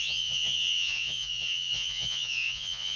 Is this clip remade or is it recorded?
remade